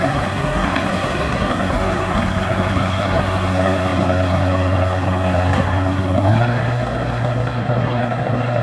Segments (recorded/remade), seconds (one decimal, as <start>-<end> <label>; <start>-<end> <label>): 0.0-8.6 remade